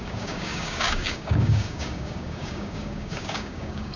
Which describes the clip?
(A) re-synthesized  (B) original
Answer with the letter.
A